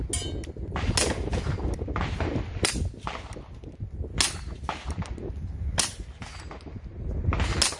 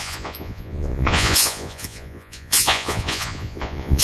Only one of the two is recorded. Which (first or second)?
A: first